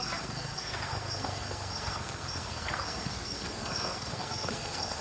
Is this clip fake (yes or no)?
yes